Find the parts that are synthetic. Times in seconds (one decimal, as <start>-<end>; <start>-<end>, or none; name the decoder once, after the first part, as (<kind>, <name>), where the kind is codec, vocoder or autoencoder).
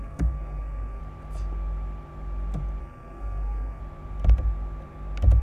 0.0-1.0 (codec, SNAC); 2.8-3.8